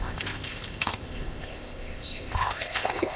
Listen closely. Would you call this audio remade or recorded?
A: remade